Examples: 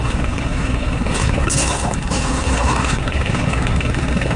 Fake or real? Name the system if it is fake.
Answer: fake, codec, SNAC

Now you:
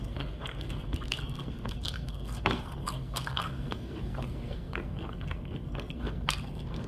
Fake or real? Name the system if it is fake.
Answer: fake, codec, SNAC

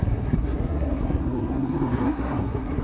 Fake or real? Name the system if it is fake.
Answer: fake, codec, SNAC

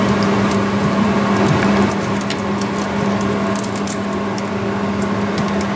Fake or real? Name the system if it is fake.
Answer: real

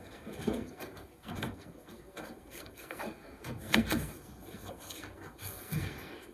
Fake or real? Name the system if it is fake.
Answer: fake, codec, SNAC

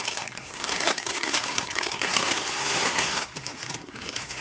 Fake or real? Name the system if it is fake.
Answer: fake, codec, SNAC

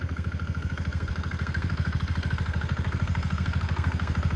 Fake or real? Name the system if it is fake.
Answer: fake, codec, SNAC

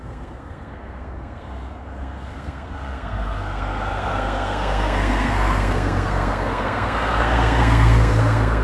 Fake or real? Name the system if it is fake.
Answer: fake, codec, SNAC